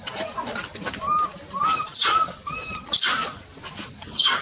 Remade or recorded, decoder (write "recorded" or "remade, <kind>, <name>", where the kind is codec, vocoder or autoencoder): recorded